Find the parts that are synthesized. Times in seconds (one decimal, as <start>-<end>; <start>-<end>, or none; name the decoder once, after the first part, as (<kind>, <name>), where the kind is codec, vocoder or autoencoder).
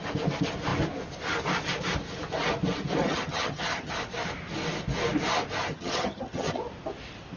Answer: 3.0-3.9 (vocoder, HiFi-GAN); 5.7-6.6